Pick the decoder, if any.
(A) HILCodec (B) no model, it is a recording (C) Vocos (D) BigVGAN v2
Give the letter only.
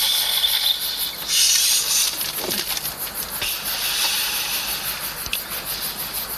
D